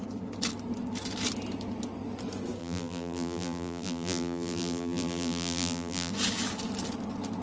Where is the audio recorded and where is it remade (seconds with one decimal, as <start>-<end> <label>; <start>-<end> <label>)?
0.0-2.6 recorded; 2.6-6.1 remade; 6.1-7.4 recorded